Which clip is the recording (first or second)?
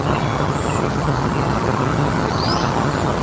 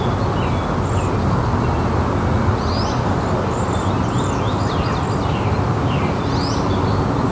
second